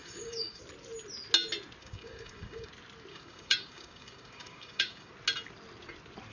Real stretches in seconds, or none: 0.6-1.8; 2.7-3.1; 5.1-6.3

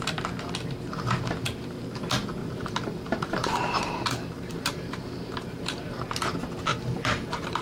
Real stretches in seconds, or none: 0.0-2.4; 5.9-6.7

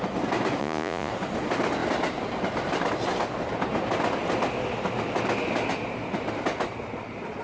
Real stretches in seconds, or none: 0.0-0.6; 1.1-7.4

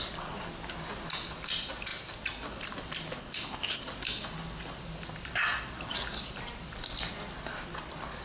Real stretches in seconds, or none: 0.0-3.2; 3.8-8.2

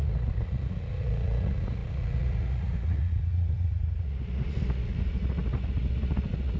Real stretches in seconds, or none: none